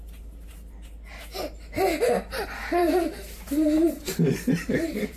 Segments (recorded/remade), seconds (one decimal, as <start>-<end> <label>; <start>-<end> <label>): 0.0-2.8 recorded; 2.8-5.2 remade

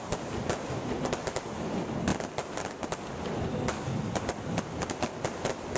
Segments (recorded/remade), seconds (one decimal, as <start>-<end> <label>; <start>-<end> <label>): 0.0-5.8 recorded